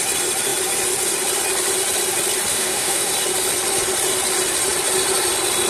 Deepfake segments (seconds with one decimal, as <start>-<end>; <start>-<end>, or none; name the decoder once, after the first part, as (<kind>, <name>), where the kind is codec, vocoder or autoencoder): 2.5-3.1 (autoencoder, DAC-VAE)